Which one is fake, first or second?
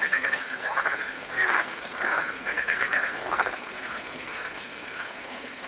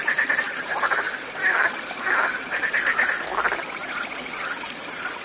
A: first